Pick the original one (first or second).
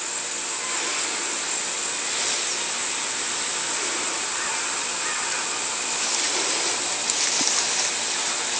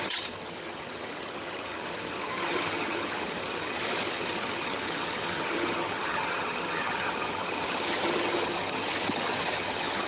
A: first